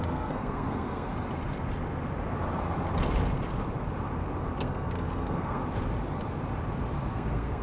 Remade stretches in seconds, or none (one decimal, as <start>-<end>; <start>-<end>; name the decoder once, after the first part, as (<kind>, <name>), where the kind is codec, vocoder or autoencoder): 0.0-1.1 (codec, SNAC); 4.6-5.6; 7.1-7.6